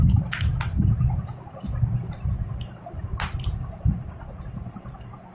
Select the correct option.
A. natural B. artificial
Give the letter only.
A